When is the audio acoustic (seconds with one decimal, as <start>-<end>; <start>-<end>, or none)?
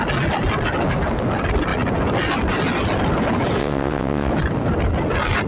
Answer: 0.0-3.6; 4.3-5.5